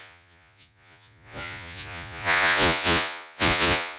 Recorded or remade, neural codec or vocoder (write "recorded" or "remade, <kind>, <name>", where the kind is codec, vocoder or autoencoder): remade, vocoder, Vocos